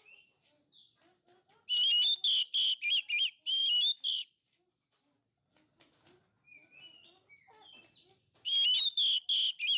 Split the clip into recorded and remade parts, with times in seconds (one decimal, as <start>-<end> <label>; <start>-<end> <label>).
0.0-9.8 recorded